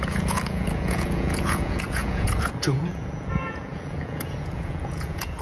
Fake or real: fake